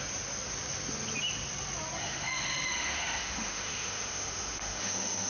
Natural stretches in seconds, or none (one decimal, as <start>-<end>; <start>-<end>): 0.0-2.0